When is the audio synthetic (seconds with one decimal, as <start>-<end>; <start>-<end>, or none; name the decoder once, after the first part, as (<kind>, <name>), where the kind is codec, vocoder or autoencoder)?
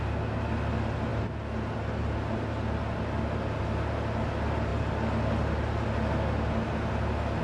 none